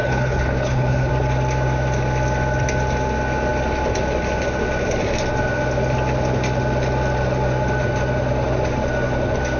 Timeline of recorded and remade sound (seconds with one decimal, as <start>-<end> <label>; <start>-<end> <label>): 0.0-1.1 remade; 1.1-9.6 recorded